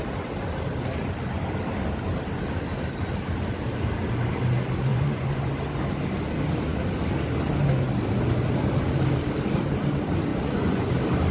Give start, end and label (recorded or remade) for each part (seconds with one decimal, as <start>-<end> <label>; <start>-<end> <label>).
0.0-4.9 recorded; 4.9-5.5 remade; 5.5-10.3 recorded; 10.3-10.9 remade; 10.9-11.3 recorded